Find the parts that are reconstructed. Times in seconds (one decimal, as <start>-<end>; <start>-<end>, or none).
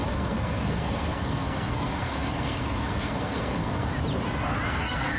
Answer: 0.0-3.9; 4.7-5.2